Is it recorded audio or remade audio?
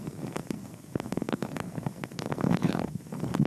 remade